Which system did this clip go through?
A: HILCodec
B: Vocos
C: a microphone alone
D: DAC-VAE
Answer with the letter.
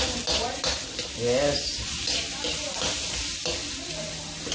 C